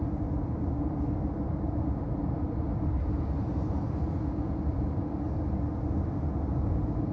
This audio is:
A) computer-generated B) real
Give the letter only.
B